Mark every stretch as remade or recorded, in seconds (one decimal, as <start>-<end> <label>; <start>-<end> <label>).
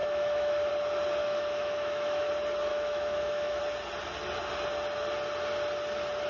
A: 0.0-0.7 remade; 0.7-1.2 recorded; 1.2-2.3 remade; 2.3-2.7 recorded; 2.7-3.6 remade; 3.6-6.3 recorded